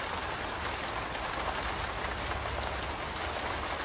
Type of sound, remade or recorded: recorded